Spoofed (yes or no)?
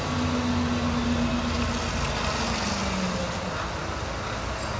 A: no